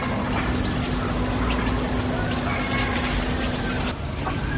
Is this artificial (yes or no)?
no